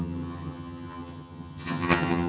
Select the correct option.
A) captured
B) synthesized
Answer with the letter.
B